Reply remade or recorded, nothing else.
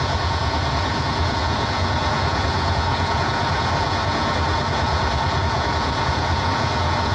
remade